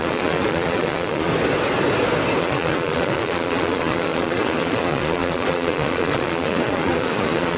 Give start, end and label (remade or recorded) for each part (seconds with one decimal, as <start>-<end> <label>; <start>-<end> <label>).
0.0-1.3 remade; 1.3-2.4 recorded; 2.4-7.6 remade